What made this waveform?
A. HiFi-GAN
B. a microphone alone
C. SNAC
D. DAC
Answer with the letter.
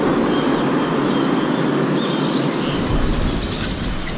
B